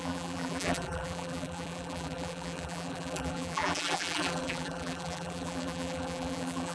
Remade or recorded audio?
remade